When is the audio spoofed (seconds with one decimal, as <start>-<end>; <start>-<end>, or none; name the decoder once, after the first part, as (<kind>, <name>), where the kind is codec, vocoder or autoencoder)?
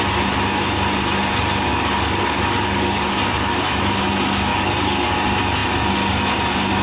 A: 1.7-4.0 (codec, DAC); 4.5-5.1